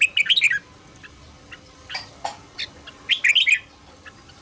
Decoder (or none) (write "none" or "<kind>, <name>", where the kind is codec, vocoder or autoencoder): none